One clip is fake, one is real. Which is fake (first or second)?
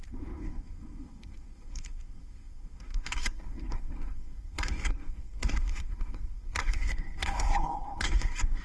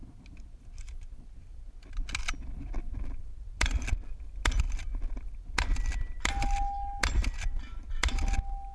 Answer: first